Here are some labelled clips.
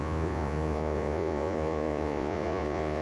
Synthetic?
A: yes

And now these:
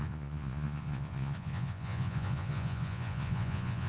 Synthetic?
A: yes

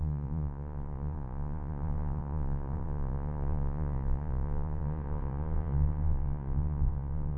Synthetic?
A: yes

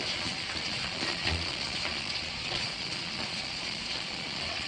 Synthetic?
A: yes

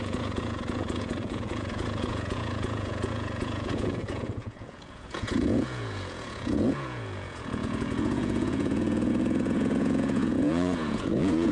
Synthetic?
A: yes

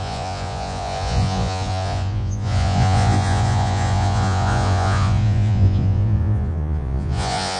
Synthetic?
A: yes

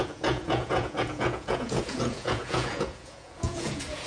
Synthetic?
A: yes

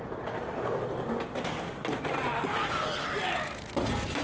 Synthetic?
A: no